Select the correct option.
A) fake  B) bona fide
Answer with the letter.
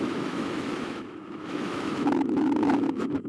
A